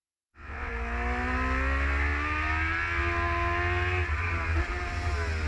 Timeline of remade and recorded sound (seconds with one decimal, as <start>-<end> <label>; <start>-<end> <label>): 0.0-0.7 remade; 0.7-5.5 recorded